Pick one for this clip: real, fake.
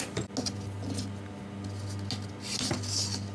real